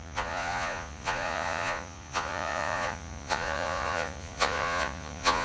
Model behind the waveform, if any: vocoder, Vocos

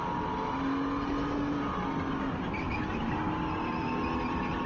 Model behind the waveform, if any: none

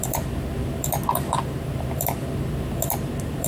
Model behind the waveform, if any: none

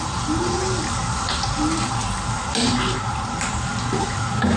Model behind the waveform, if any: none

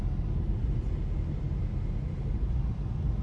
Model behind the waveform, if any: none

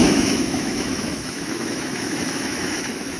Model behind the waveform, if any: autoencoder, DAC-VAE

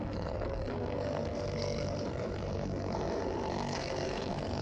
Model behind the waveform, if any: codec, SNAC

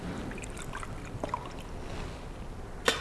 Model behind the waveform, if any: none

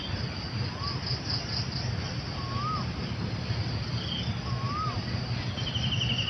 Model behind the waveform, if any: none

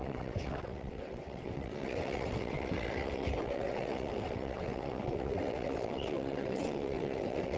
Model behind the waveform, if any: vocoder, WaveNeXt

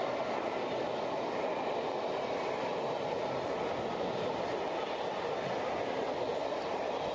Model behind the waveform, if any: none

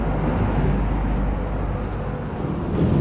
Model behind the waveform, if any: none